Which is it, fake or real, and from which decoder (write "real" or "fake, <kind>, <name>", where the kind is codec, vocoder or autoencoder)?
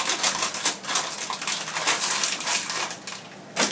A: real